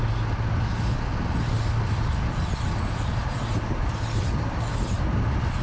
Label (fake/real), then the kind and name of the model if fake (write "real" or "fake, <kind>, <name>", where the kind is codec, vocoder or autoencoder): real